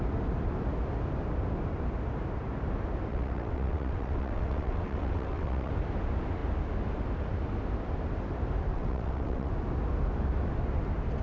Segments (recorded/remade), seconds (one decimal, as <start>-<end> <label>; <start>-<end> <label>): 0.0-3.1 recorded; 3.1-5.7 remade; 5.7-8.7 recorded; 8.7-9.5 remade; 9.5-11.2 recorded